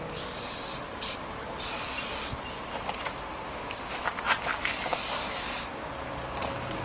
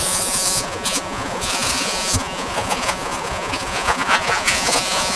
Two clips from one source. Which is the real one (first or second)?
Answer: first